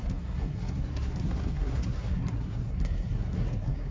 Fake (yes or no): yes